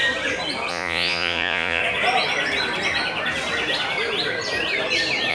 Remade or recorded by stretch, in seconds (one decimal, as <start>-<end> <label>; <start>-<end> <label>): 0.0-0.7 recorded; 0.7-1.8 remade; 1.8-5.3 recorded